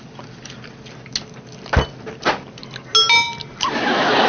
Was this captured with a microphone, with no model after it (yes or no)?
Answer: yes